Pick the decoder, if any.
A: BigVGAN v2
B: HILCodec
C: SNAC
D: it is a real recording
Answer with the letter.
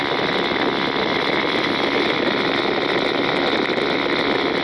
D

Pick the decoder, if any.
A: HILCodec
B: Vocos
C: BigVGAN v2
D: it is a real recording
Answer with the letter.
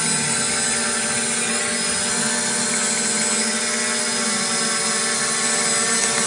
D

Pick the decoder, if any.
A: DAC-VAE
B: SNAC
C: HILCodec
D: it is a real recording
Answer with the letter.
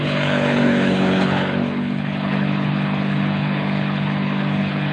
C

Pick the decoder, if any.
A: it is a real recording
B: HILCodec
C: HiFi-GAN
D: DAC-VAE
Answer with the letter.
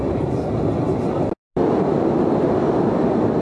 A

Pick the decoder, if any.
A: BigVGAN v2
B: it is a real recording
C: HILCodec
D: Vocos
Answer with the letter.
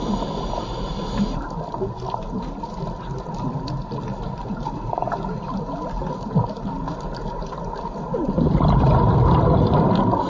B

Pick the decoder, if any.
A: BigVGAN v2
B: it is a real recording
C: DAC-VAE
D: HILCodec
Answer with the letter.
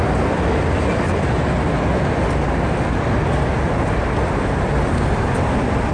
B